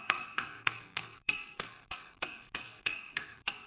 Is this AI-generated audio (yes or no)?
yes